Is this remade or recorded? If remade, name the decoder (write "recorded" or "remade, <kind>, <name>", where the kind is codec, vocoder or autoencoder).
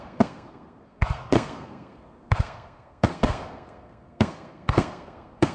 remade, codec, SNAC